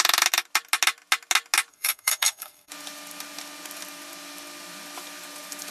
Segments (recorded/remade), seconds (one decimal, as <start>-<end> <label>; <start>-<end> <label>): 0.0-1.7 recorded; 1.7-2.7 remade; 2.7-5.7 recorded